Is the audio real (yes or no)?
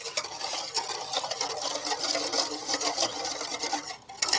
yes